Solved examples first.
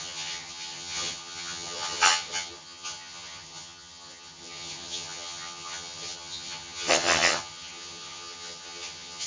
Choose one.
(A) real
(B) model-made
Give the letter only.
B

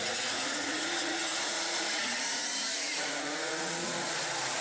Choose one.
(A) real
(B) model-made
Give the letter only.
B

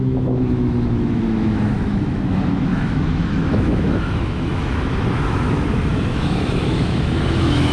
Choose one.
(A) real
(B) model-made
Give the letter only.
B